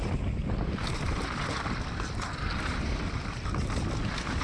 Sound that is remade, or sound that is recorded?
recorded